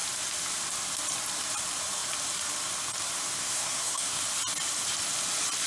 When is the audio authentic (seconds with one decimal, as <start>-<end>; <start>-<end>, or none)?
0.0-3.4; 4.2-5.7